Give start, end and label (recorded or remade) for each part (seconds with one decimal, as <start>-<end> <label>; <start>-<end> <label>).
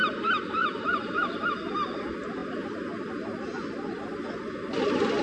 0.0-0.6 recorded; 0.6-1.4 remade; 1.4-5.2 recorded